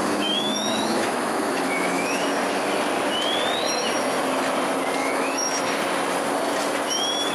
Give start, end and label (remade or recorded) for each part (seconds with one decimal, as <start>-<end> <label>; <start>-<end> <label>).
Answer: 0.0-2.2 remade; 2.2-5.0 recorded; 5.0-5.6 remade; 5.6-7.3 recorded